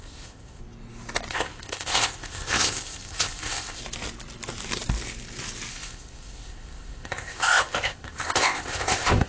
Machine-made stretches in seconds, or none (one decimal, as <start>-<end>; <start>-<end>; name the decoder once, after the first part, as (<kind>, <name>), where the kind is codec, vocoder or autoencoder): 0.0-0.6 (codec, ZipCodec); 1.3-3.8; 5.7-9.3